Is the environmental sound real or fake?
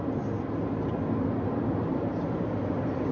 real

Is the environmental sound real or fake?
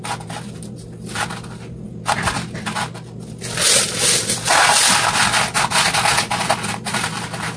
real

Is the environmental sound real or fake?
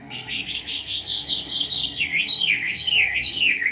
fake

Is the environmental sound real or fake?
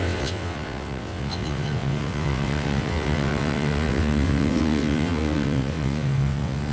fake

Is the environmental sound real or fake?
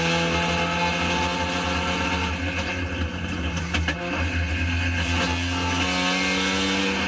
real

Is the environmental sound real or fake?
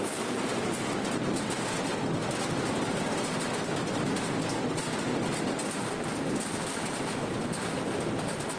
real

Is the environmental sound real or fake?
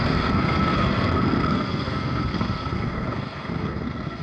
fake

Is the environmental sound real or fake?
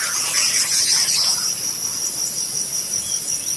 real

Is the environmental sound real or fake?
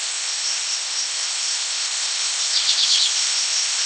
fake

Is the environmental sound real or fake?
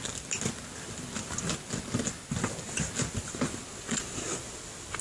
real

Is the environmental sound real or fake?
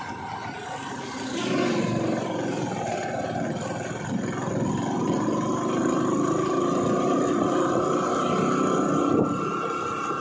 real